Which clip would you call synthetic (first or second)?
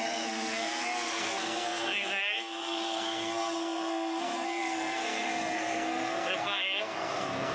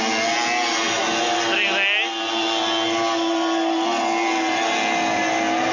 first